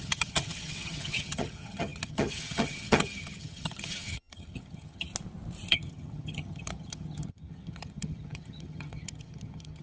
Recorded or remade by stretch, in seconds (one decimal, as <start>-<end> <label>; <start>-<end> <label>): 0.0-5.1 remade; 5.1-5.7 recorded; 5.7-9.8 remade